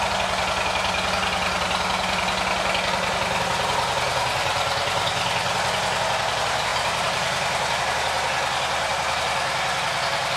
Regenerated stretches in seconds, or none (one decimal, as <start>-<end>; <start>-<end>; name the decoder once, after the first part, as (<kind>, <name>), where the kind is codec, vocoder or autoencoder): 6.7-7.8 (vocoder, BigVGAN v2)